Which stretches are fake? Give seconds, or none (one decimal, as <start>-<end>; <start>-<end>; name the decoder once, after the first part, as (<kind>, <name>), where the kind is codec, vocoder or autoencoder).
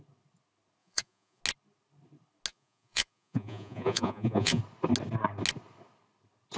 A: 0.8-1.4 (vocoder, Vocos); 2.5-4.6